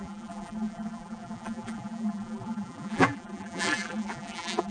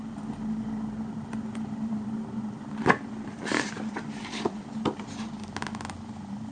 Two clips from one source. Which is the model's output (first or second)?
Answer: first